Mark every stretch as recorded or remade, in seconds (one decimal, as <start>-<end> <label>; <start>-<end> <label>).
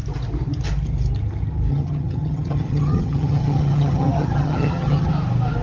0.0-1.7 recorded; 1.7-5.1 remade; 5.1-5.6 recorded